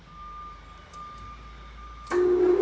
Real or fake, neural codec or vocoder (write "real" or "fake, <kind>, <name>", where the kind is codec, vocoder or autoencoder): real